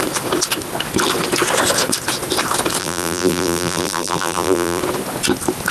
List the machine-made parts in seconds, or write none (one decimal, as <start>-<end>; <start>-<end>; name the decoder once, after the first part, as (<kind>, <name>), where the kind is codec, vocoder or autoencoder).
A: 2.8-4.8 (vocoder, BigVGAN v2)